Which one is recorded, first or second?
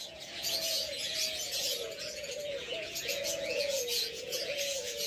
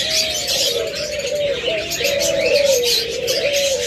second